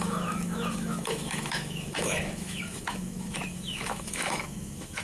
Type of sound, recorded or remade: remade